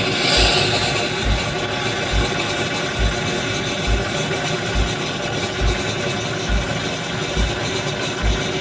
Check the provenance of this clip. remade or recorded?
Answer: recorded